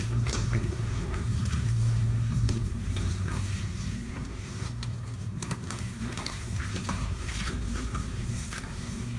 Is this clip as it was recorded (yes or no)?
no